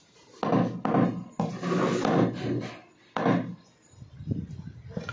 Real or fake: real